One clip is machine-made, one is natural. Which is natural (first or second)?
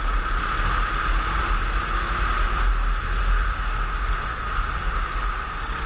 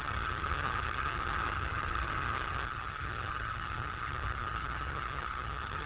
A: first